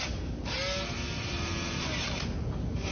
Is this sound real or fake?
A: real